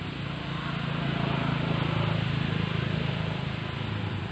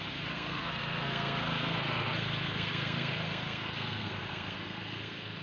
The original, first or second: first